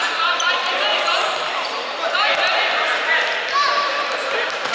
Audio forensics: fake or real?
fake